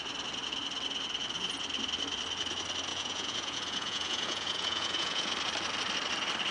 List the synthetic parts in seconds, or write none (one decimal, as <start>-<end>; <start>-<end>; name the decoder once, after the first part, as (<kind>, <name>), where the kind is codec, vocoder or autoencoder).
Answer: 2.9-5.3 (vocoder, Vocos)